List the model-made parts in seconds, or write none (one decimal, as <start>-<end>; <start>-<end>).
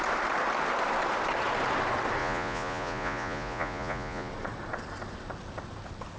2.2-4.3